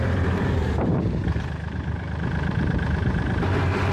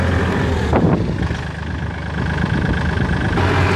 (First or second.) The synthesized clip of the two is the first